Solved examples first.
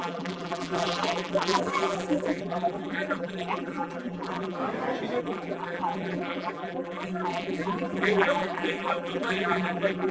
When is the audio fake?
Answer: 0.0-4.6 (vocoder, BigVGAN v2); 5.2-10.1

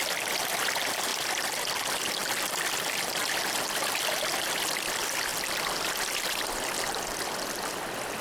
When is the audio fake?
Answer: 2.2-3.2 (vocoder, BigVGAN v2); 5.3-7.0

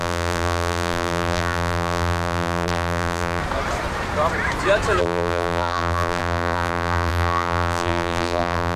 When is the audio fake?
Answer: 0.0-3.4 (vocoder, BigVGAN v2); 5.0-8.8

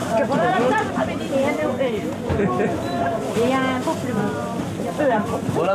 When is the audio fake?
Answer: 0.0-1.6 (vocoder, BigVGAN v2); 5.0-5.7

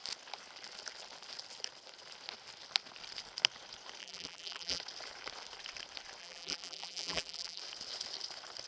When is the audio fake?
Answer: 4.0-4.8 (vocoder, BigVGAN v2); 6.2-7.6

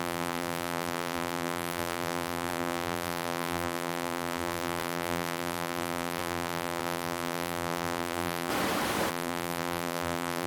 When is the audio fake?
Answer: 0.0-8.5 (vocoder, BigVGAN v2); 9.1-10.5